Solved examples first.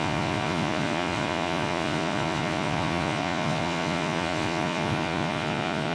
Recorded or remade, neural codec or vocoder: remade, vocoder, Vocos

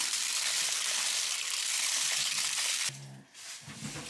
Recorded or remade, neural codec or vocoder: recorded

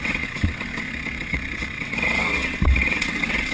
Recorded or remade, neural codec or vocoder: remade, vocoder, WaveNeXt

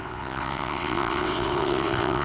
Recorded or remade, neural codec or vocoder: remade, vocoder, WaveNeXt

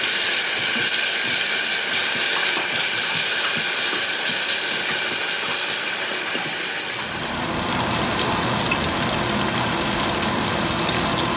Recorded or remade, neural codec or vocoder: recorded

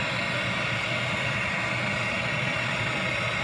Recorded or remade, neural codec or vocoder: recorded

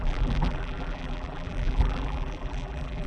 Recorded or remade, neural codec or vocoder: remade, vocoder, BigVGAN v2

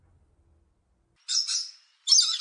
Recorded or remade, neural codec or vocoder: recorded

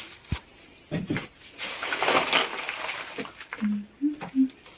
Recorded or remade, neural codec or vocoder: recorded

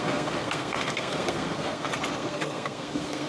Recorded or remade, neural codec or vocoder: remade, codec, SNAC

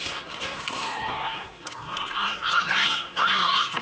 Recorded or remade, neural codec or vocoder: remade, codec, SNAC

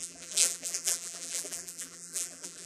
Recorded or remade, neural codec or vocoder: remade, vocoder, BigVGAN v2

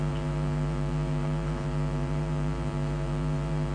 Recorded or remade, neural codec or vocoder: remade, vocoder, BigVGAN v2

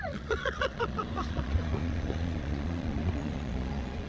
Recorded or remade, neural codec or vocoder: remade, vocoder, Vocos